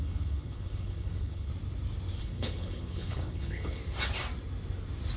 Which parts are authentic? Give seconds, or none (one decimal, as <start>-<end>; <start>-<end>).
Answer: 1.5-2.2; 3.8-5.2